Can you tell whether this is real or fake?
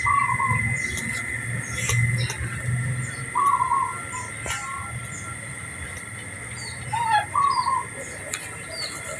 real